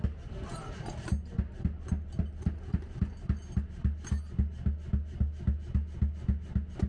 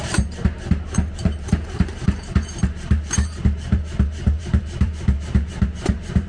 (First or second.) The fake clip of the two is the second